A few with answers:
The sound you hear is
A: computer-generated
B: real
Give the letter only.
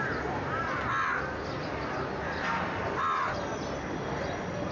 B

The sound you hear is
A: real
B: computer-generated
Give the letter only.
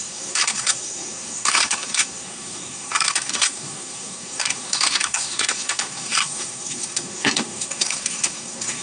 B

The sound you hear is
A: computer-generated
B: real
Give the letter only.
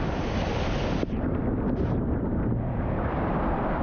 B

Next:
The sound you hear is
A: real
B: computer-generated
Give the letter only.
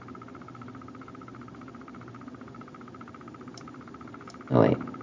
A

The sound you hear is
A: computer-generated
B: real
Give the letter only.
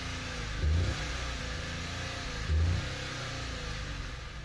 B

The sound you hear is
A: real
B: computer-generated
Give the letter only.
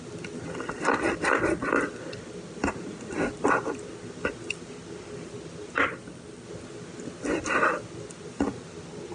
A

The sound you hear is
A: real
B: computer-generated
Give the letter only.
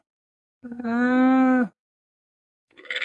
B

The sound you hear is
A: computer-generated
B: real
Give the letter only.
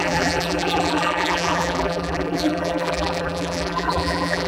A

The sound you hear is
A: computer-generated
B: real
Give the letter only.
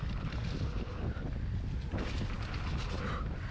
B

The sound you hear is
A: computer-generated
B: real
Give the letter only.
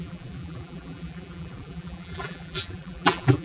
A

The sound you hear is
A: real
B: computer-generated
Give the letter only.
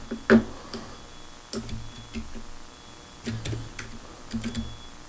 A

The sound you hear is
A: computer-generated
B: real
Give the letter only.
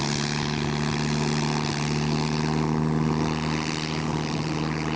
B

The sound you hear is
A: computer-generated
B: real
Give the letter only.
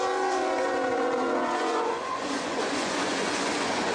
A